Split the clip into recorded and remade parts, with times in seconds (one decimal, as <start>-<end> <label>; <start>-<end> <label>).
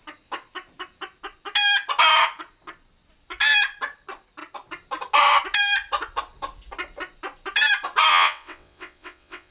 0.0-8.1 recorded; 8.1-9.5 remade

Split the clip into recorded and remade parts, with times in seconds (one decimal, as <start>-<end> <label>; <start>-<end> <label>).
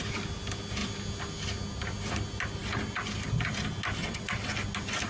0.0-4.0 recorded; 4.0-4.5 remade; 4.5-5.1 recorded